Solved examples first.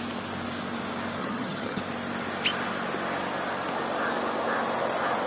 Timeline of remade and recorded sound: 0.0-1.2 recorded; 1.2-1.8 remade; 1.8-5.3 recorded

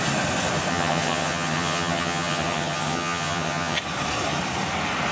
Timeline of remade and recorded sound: 0.0-0.7 recorded; 0.7-3.8 remade; 3.8-5.1 recorded

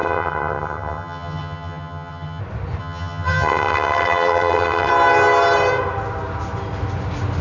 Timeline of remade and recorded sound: 0.0-2.4 remade; 2.4-2.8 recorded; 2.8-4.9 remade; 4.9-7.4 recorded

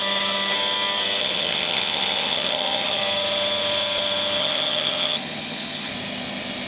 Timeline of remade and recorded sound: 0.0-1.2 recorded; 1.2-3.0 remade; 3.0-4.4 recorded; 4.4-5.9 remade; 5.9-6.7 recorded